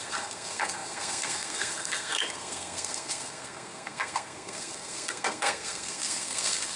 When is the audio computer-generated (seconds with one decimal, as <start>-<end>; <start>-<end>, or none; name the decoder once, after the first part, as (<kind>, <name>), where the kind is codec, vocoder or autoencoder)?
0.0-6.8 (codec, SNAC)